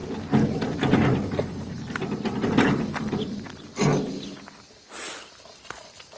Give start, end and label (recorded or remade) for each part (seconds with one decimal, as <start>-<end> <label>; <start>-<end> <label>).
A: 0.0-3.7 remade; 3.7-6.2 recorded

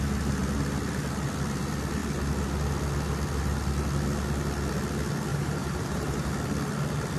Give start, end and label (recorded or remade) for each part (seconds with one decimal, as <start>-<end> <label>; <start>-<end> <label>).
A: 0.0-5.3 recorded; 5.3-6.3 remade; 6.3-7.2 recorded